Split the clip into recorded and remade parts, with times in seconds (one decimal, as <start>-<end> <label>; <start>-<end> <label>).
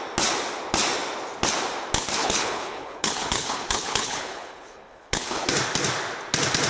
0.0-2.2 recorded; 2.2-5.5 remade; 5.5-6.7 recorded